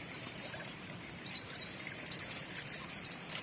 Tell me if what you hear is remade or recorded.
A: remade